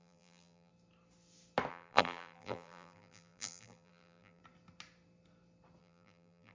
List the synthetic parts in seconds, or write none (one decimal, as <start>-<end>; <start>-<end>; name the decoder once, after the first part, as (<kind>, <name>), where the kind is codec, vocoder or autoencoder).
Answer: 0.0-0.7 (vocoder, BigVGAN v2); 1.7-4.4; 5.8-6.5